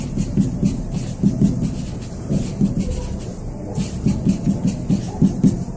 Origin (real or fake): real